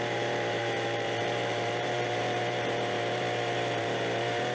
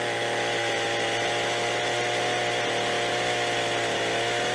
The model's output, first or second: first